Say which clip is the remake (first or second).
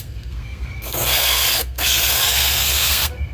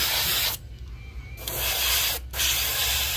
first